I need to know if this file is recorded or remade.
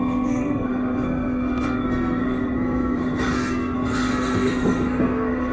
remade